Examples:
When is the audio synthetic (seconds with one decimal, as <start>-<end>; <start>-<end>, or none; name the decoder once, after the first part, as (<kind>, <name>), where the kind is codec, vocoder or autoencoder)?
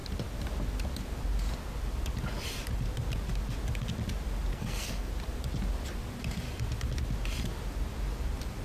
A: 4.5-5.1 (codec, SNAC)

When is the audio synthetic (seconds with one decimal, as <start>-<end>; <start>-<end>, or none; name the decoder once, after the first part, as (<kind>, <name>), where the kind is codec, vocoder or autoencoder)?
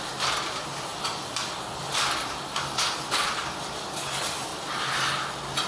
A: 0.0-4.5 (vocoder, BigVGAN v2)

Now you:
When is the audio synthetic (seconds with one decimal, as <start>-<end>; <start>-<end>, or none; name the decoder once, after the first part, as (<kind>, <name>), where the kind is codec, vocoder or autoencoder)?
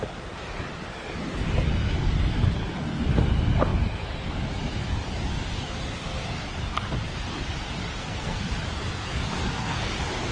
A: 8.0-8.6 (codec, SNAC); 9.4-9.9